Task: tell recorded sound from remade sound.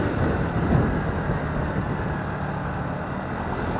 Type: recorded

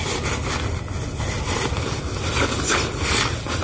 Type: recorded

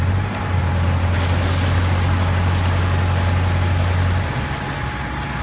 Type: recorded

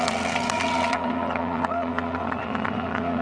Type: remade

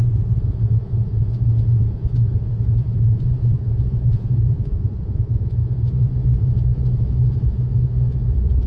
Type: remade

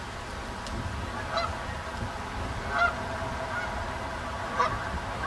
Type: recorded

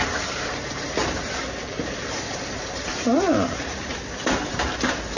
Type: remade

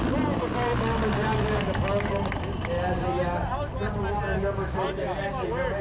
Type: recorded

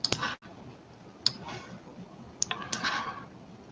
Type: recorded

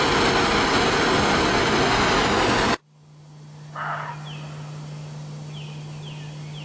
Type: recorded